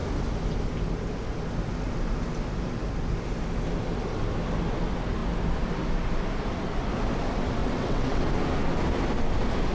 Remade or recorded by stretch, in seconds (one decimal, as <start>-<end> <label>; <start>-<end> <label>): 0.0-7.6 recorded; 7.6-8.2 remade; 8.2-9.7 recorded